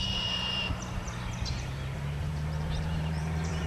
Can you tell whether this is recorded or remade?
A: remade